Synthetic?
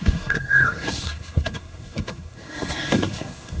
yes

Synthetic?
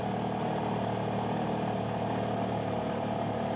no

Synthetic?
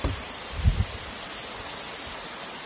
no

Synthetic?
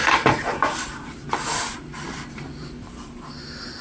no